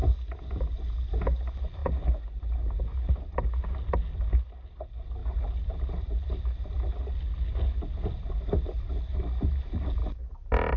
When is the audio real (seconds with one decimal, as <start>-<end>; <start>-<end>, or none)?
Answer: 0.0-10.8